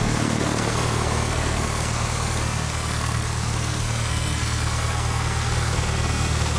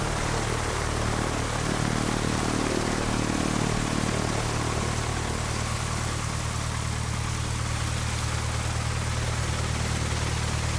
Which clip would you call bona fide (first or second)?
second